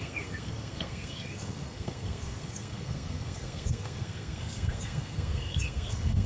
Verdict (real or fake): fake